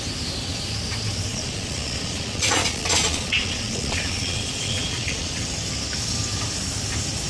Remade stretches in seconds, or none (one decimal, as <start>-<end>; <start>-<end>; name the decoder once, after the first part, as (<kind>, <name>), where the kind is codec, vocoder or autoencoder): 1.3-5.4 (vocoder, Vocos)